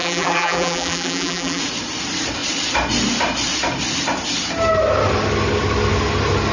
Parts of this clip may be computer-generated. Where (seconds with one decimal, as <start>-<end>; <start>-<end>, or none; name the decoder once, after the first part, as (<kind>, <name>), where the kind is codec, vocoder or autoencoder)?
0.0-1.6 (vocoder, BigVGAN v2)